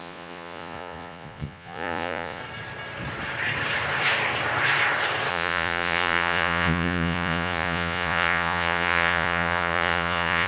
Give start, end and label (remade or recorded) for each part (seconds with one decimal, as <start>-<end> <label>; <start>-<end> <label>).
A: 0.0-2.4 remade; 2.4-5.3 recorded; 5.3-10.5 remade

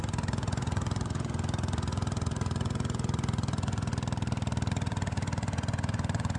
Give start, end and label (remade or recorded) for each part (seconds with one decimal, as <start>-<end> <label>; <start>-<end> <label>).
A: 0.0-3.9 remade; 3.9-4.7 recorded; 4.7-6.4 remade